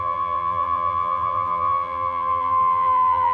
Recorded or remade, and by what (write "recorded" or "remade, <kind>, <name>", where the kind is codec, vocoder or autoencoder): remade, vocoder, BigVGAN v2